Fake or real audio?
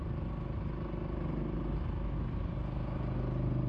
real